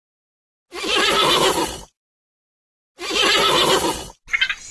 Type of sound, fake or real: real